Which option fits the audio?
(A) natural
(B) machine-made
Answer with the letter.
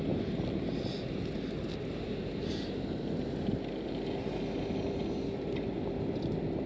A